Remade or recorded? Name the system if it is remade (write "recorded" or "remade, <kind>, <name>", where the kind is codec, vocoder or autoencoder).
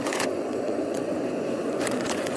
remade, vocoder, Vocos